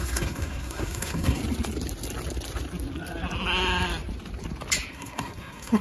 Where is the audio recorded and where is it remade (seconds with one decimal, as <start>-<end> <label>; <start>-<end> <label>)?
0.0-1.4 remade; 1.4-4.9 recorded; 4.9-5.8 remade